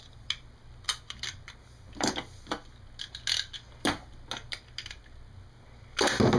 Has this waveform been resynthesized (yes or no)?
no